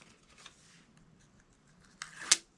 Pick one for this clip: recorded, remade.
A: recorded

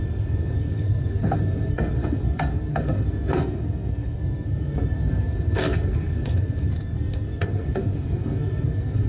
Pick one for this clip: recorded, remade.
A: remade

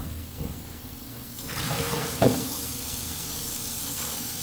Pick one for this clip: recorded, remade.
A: remade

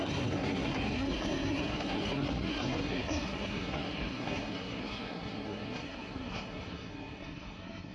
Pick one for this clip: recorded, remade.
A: remade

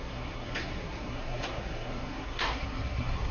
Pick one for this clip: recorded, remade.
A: remade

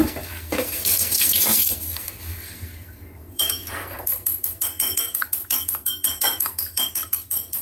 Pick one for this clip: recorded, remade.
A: remade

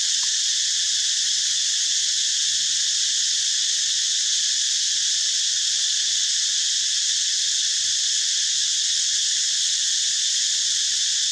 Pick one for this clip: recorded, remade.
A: recorded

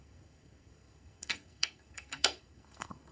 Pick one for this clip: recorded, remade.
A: remade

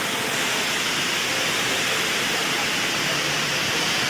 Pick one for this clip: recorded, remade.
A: recorded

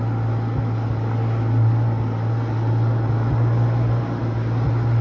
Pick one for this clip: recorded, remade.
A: recorded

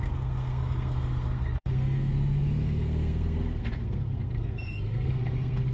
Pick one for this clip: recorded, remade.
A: remade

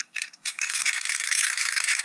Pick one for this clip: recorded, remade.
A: remade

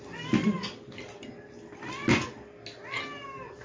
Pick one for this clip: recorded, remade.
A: recorded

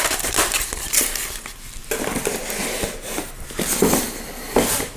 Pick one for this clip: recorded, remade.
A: recorded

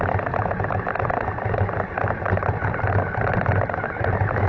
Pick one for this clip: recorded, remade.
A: recorded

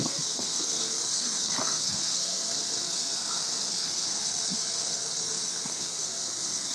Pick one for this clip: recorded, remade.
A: remade